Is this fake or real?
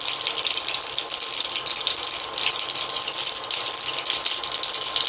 real